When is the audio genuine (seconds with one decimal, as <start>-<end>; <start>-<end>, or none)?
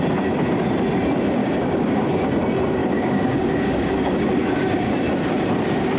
0.0-1.4; 2.3-2.8; 4.9-6.0